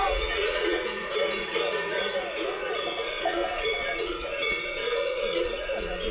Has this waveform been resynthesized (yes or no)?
yes